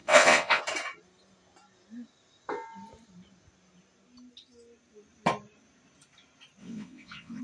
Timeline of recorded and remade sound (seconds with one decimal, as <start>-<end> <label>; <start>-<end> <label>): 0.0-0.6 remade; 0.6-6.6 recorded; 6.6-7.4 remade